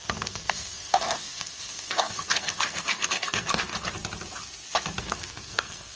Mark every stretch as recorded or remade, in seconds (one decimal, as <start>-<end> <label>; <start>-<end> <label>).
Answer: 0.0-3.7 remade; 3.7-5.0 recorded; 5.0-6.0 remade